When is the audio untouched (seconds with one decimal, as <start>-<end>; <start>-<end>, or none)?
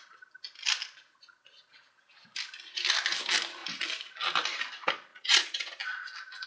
0.0-5.1; 5.8-6.5